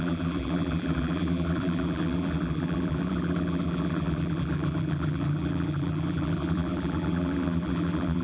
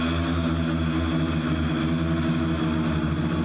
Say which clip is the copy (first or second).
first